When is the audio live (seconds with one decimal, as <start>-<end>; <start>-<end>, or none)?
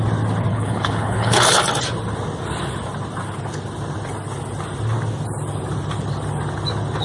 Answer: 0.0-0.5; 1.6-7.0